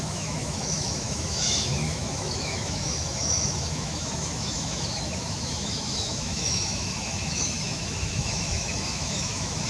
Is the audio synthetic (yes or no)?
yes